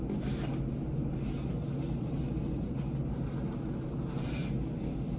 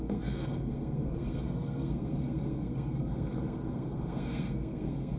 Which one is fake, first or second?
second